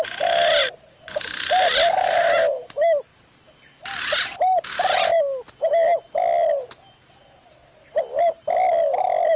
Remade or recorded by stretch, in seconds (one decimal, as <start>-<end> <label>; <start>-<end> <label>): 0.0-9.4 recorded